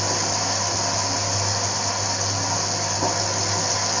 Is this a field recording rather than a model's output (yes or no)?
yes